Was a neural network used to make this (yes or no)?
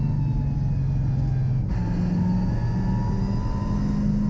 no